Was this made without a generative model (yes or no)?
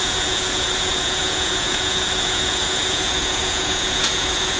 no